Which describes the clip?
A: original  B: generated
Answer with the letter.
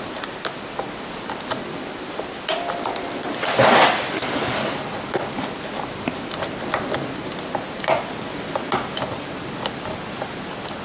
A